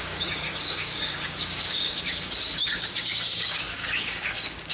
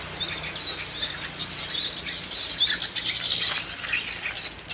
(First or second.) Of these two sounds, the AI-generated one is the first